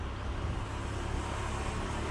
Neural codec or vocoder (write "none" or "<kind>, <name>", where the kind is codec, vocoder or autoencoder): none